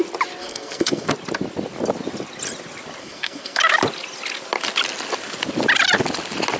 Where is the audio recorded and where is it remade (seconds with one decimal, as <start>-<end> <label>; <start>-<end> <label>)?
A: 0.0-0.4 recorded; 0.4-1.1 remade; 1.1-3.0 recorded; 3.0-3.6 remade; 3.6-6.6 recorded

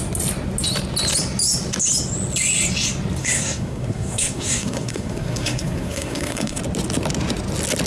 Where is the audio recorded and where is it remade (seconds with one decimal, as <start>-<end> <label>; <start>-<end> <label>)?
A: 0.0-3.2 recorded; 3.2-6.6 remade; 6.6-7.9 recorded

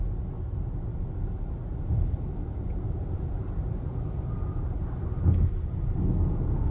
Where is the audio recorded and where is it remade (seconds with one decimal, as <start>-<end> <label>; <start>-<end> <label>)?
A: 0.0-6.7 recorded